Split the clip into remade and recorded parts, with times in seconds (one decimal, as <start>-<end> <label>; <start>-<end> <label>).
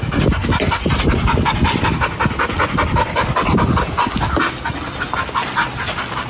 0.0-6.3 recorded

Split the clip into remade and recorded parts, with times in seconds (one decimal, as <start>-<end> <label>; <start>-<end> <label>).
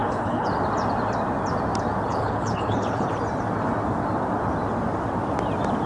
0.0-0.5 remade; 0.5-2.1 recorded; 2.1-3.1 remade; 3.1-5.9 recorded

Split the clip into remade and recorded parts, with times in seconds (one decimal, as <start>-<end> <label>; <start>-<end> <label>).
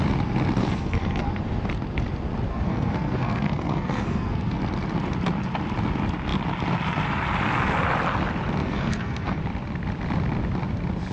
0.0-0.6 recorded; 0.6-1.4 remade; 1.4-2.5 recorded; 2.5-4.6 remade; 4.6-8.6 recorded; 8.6-9.4 remade; 9.4-11.1 recorded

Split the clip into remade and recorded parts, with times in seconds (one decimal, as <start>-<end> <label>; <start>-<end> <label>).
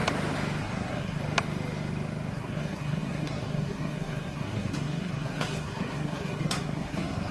0.0-0.6 recorded; 0.6-1.2 remade; 1.2-2.3 recorded; 2.3-7.3 remade